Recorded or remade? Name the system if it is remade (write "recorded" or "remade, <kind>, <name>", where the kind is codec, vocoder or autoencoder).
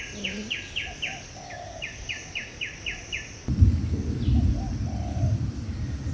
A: recorded